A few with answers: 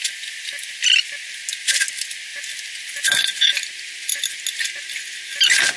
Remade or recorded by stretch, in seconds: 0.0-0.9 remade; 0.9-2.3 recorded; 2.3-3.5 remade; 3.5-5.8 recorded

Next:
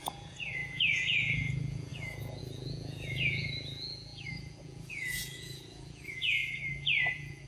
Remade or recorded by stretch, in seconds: 0.0-6.4 remade; 6.4-7.0 recorded; 7.0-7.5 remade

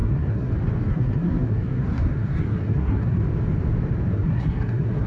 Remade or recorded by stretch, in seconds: 0.0-0.5 remade; 0.5-0.9 recorded; 0.9-3.2 remade; 3.2-4.1 recorded; 4.1-5.1 remade